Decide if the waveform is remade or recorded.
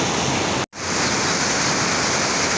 recorded